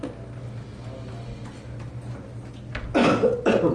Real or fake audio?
real